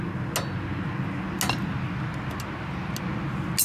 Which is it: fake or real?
real